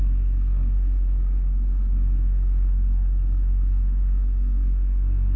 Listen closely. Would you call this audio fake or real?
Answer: fake